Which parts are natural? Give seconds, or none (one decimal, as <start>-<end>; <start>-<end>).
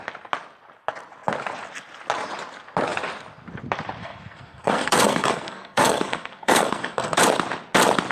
0.0-4.0; 7.2-8.1